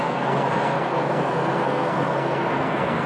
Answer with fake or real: fake